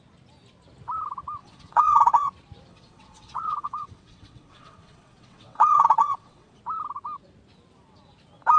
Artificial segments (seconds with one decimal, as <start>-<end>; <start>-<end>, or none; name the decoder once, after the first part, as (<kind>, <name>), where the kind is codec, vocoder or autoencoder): 1.4-2.3 (vocoder, WaveNeXt); 2.7-6.6

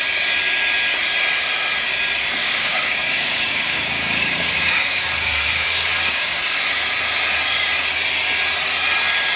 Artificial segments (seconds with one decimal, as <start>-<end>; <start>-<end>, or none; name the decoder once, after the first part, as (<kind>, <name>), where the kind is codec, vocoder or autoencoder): 2.4-6.6 (codec, DAC)

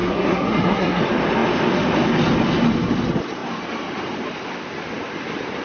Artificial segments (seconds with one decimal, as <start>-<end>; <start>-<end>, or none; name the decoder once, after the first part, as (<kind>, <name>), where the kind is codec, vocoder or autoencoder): 0.0-1.0 (codec, SNAC)

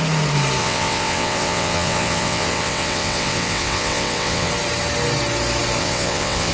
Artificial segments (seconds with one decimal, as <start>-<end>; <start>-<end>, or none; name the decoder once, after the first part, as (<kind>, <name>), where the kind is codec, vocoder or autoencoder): 0.6-4.5 (vocoder, WaveNeXt); 5.8-6.5

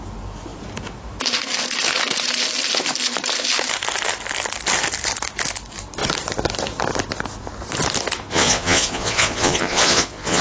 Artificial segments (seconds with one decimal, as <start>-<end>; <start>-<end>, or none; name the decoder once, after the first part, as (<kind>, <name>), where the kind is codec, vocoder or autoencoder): 8.3-10.4 (vocoder, Vocos)

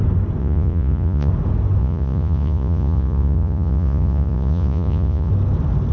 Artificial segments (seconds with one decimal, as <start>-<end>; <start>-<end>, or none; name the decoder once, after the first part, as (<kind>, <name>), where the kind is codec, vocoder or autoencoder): 0.4-1.3 (vocoder, Vocos); 1.8-5.3

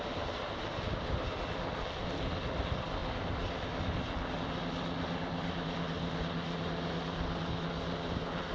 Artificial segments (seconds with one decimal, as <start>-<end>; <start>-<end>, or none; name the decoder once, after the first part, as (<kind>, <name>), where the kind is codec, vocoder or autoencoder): none